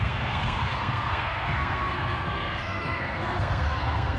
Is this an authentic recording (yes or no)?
no